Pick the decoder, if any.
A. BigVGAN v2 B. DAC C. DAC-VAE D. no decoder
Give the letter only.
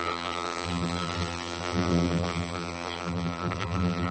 A